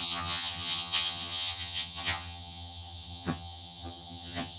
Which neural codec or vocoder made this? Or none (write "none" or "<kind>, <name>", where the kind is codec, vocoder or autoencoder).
vocoder, HiFi-GAN